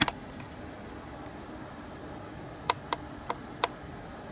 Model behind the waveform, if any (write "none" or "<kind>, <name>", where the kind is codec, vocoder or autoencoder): none